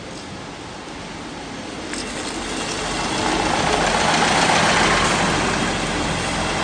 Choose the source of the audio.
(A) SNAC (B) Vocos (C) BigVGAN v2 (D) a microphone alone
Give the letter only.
D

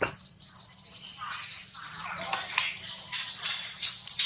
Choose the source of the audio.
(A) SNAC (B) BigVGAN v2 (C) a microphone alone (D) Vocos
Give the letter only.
B